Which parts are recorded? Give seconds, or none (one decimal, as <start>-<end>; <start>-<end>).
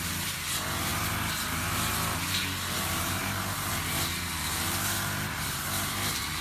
none